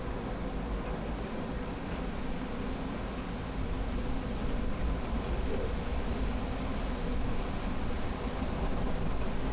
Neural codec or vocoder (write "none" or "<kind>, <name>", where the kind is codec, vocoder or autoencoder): none